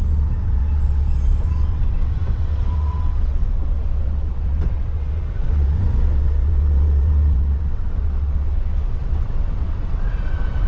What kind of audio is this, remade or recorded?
remade